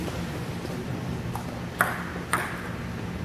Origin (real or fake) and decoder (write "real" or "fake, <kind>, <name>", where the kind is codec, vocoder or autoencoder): real